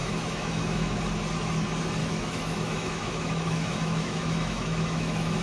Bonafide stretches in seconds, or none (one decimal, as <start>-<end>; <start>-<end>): 1.0-2.0